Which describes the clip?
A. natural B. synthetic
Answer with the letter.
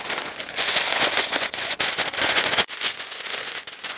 B